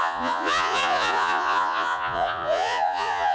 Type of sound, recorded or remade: remade